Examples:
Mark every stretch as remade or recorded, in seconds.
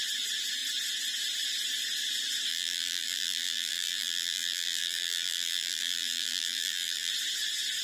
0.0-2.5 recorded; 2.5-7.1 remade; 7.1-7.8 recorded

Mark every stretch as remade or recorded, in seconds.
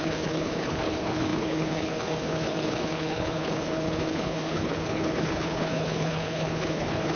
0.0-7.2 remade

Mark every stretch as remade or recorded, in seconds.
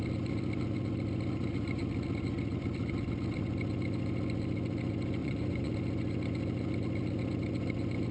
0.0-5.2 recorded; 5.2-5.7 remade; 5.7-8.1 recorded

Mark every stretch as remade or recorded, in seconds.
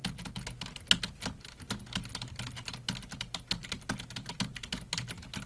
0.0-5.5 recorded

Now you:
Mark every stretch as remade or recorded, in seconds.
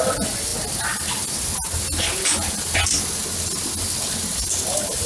0.0-5.1 recorded